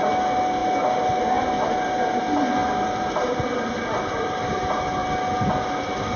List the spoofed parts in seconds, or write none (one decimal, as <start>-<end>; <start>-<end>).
2.6-4.5